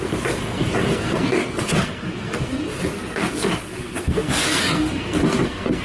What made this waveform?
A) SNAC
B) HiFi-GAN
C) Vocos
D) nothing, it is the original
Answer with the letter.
A